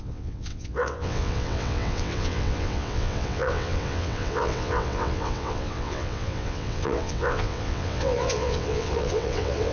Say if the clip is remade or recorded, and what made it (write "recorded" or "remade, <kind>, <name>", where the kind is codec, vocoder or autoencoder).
remade, vocoder, WaveNeXt